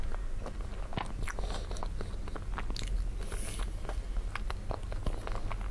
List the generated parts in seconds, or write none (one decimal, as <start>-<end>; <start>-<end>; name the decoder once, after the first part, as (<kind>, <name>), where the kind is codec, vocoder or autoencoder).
none